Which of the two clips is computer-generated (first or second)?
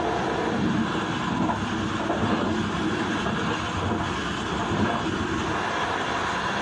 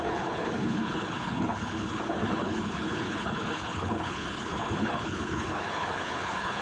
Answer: second